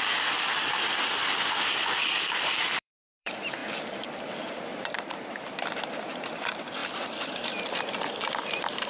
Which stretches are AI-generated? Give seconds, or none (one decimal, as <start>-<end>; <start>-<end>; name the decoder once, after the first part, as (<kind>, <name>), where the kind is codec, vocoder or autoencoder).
0.0-3.6 (vocoder, BigVGAN v2); 5.1-8.9

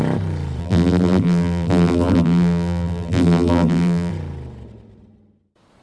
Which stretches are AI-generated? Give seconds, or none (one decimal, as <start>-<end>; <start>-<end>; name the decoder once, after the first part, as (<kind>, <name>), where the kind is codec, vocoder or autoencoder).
0.6-4.1 (vocoder, BigVGAN v2)

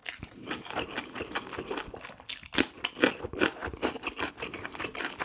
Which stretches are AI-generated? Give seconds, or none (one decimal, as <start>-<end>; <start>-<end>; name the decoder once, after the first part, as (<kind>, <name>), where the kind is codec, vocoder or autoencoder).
3.1-3.6 (vocoder, BigVGAN v2); 4.3-5.2

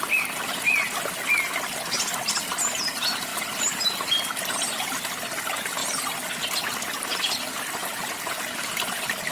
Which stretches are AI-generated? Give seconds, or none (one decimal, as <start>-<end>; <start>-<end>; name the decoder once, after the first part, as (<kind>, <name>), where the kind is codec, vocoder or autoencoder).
7.8-9.3 (vocoder, BigVGAN v2)

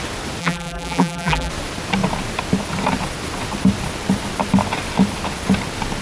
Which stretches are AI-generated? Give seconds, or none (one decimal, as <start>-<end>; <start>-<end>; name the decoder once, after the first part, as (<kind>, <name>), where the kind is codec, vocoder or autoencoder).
0.4-1.5 (vocoder, BigVGAN v2)

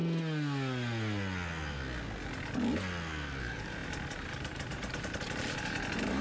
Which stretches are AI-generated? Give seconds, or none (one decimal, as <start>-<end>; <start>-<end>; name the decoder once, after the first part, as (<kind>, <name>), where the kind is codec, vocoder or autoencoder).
3.4-6.2 (vocoder, BigVGAN v2)